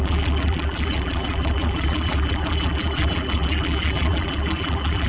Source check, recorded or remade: remade